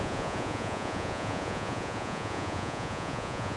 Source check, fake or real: fake